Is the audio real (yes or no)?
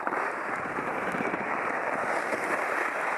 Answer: no